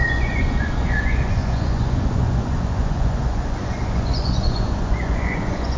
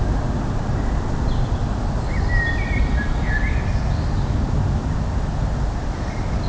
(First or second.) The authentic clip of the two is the second